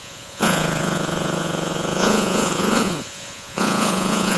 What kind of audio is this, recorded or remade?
remade